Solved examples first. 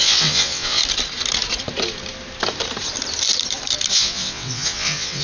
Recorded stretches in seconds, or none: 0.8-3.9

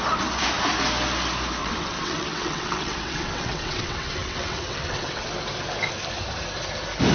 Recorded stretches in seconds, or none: 0.0-1.6; 5.3-7.1